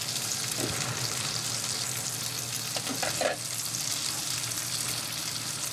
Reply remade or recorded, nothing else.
recorded